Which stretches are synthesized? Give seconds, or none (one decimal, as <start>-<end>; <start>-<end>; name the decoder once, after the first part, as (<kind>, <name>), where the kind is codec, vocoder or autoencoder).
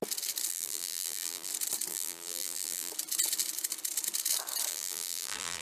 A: 0.5-1.5 (vocoder, BigVGAN v2); 1.9-2.9; 4.7-5.6